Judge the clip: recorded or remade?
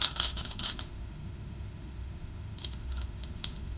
remade